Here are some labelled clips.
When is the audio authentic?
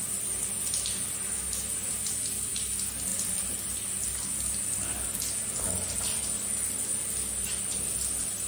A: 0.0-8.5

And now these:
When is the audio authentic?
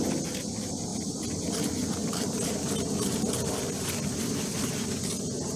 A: 0.0-5.6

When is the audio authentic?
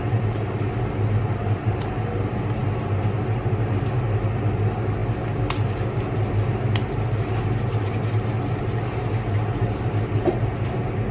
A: 0.0-11.1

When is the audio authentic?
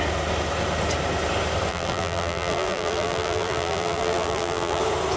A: 0.0-1.7; 4.8-5.2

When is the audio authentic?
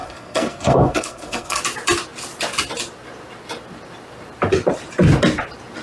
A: 1.6-5.8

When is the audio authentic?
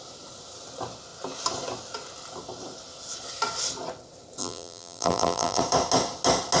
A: 0.0-4.4; 5.6-6.6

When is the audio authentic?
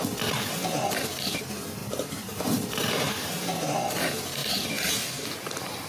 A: 0.0-1.8; 3.3-5.9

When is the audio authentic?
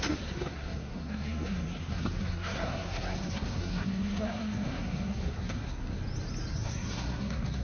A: 6.0-6.5